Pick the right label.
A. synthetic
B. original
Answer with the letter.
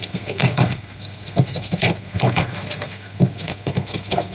A